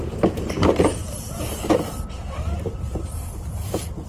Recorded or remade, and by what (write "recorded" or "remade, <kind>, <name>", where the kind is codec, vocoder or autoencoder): remade, vocoder, BigVGAN v2